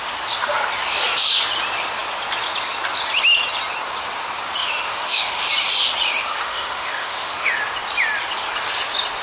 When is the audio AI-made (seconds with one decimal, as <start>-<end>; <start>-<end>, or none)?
4.6-5.5; 6.3-7.6